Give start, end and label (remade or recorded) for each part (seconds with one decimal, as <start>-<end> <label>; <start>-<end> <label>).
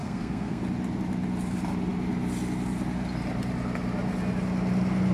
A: 0.0-0.6 remade; 0.6-5.1 recorded